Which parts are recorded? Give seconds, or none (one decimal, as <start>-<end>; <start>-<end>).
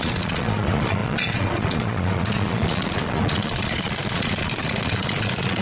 none